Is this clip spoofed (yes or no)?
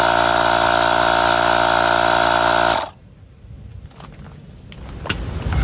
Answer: no